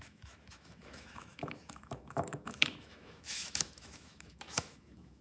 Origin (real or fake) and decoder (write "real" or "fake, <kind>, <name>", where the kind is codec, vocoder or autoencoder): fake, autoencoder, DAC-VAE